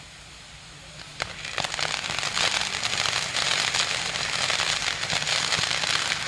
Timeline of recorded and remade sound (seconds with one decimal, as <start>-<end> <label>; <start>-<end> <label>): 0.0-6.3 recorded